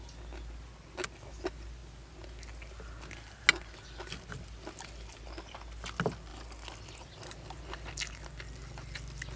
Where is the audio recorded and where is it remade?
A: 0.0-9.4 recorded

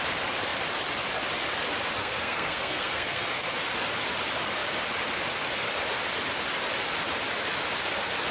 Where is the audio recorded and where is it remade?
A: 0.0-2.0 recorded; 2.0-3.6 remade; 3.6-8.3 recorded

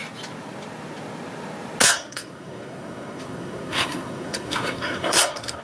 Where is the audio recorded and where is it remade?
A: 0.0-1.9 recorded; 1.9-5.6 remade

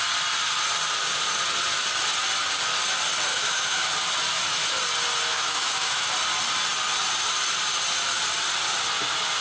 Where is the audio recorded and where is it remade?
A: 0.0-3.3 recorded; 3.3-3.9 remade; 3.9-5.3 recorded; 5.3-6.1 remade; 6.1-9.4 recorded

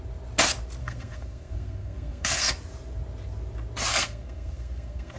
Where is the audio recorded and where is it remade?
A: 0.0-0.8 recorded; 0.8-2.5 remade; 2.5-3.9 recorded; 3.9-5.2 remade